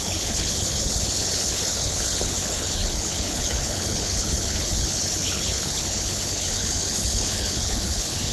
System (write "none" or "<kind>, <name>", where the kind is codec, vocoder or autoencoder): codec, HILCodec